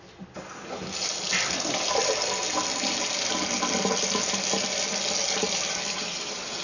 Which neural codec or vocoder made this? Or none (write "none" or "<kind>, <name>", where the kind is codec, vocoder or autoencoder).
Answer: none